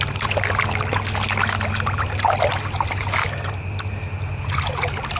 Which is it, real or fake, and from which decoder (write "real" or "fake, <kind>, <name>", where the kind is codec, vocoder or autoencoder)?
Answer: real